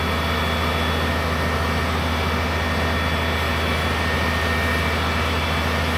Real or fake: real